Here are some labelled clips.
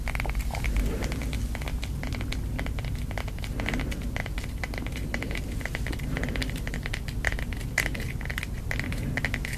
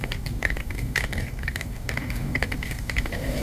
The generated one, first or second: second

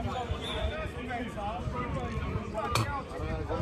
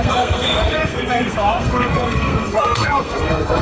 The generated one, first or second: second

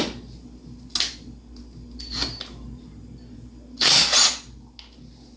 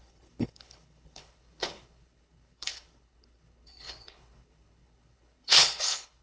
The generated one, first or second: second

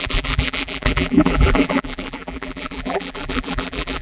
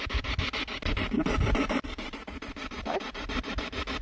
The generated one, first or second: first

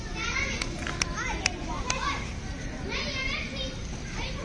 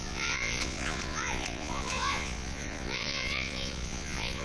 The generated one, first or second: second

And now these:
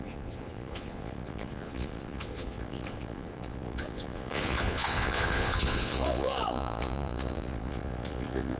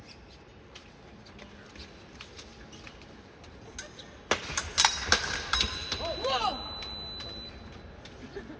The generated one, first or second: first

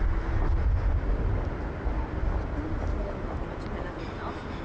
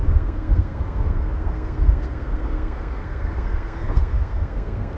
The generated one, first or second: second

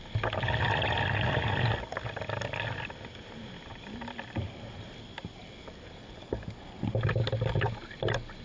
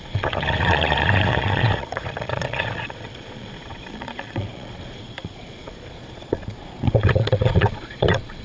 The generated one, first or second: second